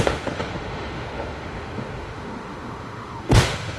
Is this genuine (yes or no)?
no